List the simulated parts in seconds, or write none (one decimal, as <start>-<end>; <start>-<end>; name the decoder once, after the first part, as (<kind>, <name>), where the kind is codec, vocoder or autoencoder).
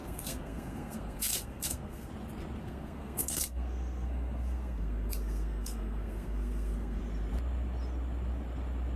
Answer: 0.0-2.1 (codec, SNAC); 2.6-7.0